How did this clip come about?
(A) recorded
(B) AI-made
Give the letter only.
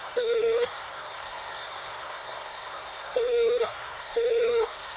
B